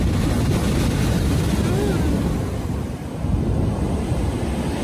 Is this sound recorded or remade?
recorded